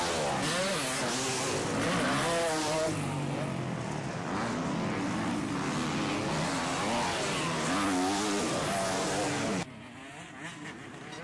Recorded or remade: recorded